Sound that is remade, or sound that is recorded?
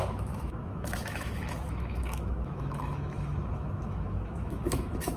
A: remade